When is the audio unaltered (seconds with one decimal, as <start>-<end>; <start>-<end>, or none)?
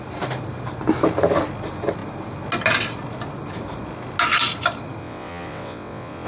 0.0-5.0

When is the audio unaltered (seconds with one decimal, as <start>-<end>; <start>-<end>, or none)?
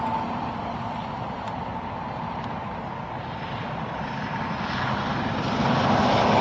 0.0-6.4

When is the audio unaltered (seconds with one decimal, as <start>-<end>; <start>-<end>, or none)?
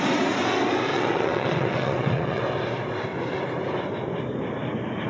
0.0-0.9; 2.4-5.1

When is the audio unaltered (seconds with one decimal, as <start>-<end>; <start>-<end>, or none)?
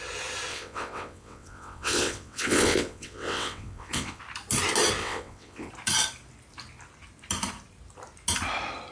0.0-0.5; 4.2-5.0; 5.7-8.9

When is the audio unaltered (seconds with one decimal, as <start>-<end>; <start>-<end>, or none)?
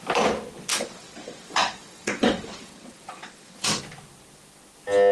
0.0-0.7; 3.8-5.1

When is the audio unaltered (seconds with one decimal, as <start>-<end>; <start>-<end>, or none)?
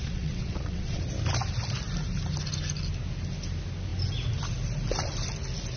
1.0-5.8